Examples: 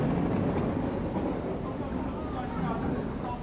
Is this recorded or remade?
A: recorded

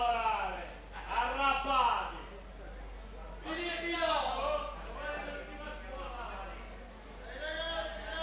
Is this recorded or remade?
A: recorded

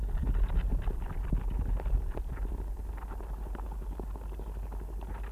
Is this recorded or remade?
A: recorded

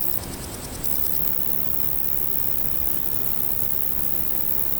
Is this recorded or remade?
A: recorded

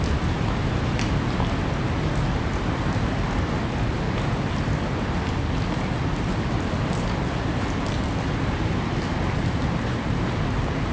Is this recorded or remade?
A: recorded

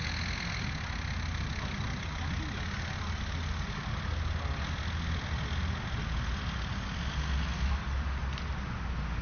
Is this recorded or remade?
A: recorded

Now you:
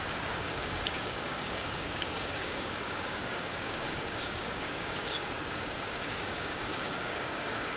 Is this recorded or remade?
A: remade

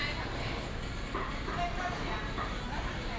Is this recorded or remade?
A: recorded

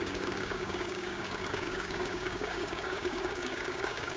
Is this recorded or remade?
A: remade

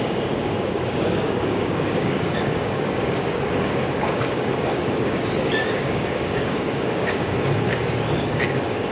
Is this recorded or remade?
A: remade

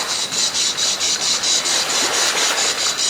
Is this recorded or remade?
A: remade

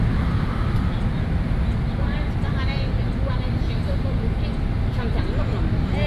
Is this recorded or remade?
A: recorded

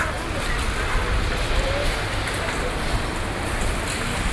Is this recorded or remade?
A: recorded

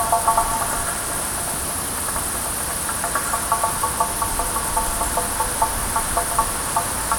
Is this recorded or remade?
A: recorded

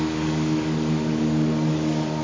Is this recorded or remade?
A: remade